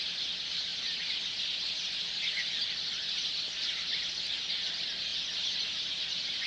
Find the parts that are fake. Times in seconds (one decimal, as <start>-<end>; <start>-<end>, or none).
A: none